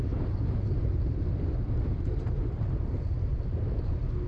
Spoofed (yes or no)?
no